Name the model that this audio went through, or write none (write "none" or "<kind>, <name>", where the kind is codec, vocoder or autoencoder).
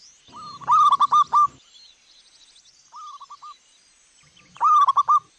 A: none